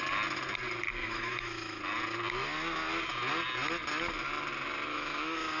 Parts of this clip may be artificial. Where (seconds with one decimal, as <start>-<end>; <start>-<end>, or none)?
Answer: 1.0-1.8; 4.9-5.6